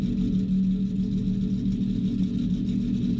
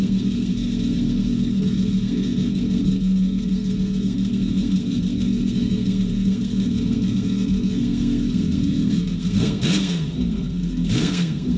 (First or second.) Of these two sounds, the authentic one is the first